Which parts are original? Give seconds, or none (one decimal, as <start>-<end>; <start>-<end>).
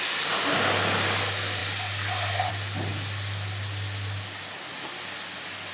0.0-5.7